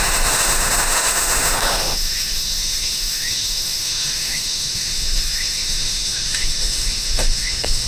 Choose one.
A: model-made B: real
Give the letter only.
A